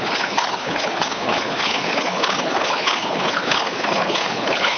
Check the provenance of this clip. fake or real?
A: fake